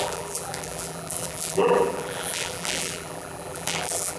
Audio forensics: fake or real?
fake